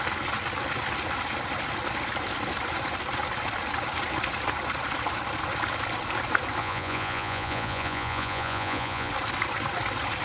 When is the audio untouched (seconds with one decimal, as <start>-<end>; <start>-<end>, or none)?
0.0-6.6; 9.1-10.2